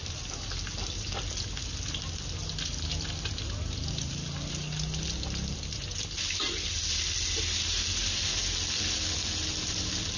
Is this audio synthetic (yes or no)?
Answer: no